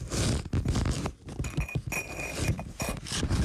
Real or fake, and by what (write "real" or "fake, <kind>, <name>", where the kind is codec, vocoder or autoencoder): real